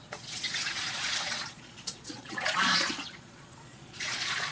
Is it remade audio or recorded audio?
remade